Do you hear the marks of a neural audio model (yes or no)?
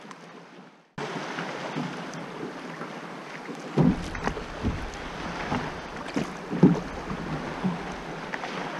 no